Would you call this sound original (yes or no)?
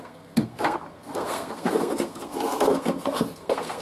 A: no